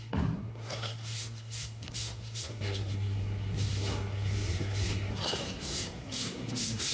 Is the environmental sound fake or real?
fake